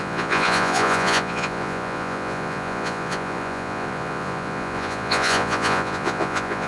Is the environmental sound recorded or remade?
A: remade